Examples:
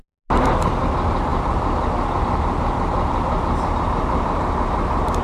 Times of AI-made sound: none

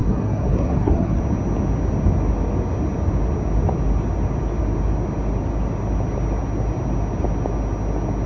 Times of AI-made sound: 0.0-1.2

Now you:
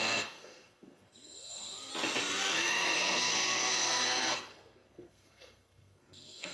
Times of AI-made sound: 0.0-1.9; 2.5-6.5

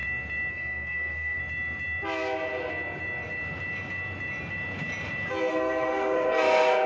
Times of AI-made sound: 0.5-1.4; 5.5-6.9

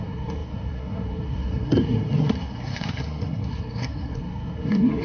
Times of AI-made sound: 0.0-5.0

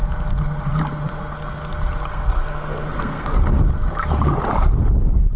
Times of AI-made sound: 2.1-3.6

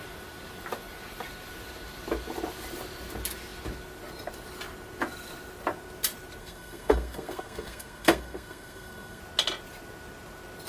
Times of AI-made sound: 6.4-9.2

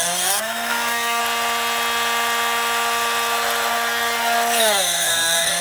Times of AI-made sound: 0.0-1.2; 4.6-5.6